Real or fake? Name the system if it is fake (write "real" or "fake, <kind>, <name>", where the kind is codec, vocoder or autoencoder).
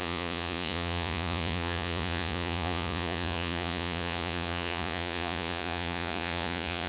fake, vocoder, Vocos